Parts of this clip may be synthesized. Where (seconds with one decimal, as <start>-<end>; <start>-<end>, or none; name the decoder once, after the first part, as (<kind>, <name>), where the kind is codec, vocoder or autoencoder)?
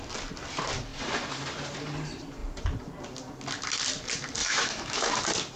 4.4-5.1 (autoencoder, DAC-VAE)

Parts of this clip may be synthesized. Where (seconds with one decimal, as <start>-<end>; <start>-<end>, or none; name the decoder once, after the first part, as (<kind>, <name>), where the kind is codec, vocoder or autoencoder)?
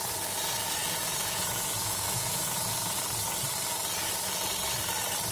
0.8-3.0 (vocoder, Vocos)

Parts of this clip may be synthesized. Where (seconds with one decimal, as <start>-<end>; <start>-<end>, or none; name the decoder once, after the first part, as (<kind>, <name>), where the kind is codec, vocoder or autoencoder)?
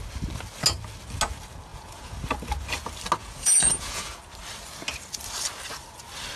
1.7-2.2 (vocoder, Vocos); 3.2-4.2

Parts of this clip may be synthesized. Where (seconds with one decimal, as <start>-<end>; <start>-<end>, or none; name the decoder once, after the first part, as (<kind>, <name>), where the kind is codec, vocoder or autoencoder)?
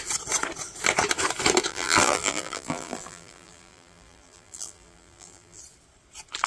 1.7-5.6 (vocoder, BigVGAN v2)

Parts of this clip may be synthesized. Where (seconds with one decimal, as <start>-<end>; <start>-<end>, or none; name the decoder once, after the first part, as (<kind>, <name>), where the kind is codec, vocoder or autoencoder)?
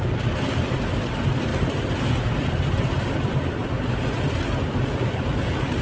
none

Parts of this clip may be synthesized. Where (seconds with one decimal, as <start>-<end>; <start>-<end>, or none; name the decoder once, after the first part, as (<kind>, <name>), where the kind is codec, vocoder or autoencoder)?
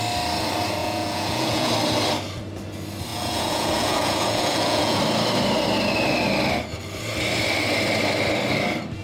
0.8-1.7 (vocoder, Vocos); 3.1-5.0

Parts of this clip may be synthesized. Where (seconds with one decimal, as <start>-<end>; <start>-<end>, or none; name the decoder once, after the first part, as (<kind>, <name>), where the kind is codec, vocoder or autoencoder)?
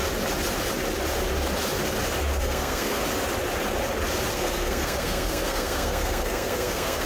2.4-3.0 (codec, SNAC); 4.3-7.1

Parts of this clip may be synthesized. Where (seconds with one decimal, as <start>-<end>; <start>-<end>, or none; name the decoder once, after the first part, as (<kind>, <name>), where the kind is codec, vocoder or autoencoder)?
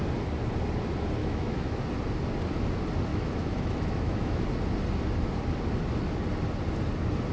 1.2-1.8 (autoencoder, DAC-VAE); 3.1-4.4